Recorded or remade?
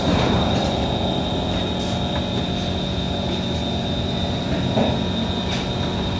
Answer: recorded